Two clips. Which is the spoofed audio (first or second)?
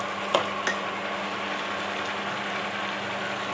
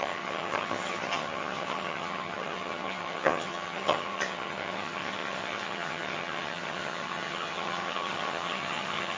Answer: second